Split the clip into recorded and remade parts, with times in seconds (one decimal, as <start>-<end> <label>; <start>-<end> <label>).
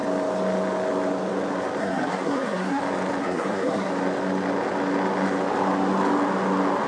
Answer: 0.0-1.8 recorded; 1.8-2.8 remade; 2.8-3.2 recorded; 3.2-3.9 remade; 3.9-6.9 recorded